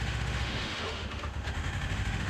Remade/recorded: remade